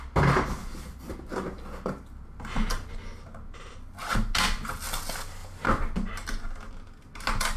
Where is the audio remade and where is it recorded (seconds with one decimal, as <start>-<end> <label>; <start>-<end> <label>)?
0.0-7.6 recorded